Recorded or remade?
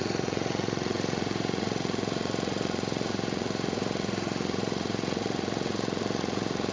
remade